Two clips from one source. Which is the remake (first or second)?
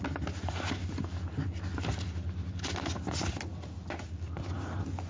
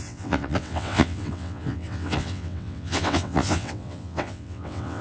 second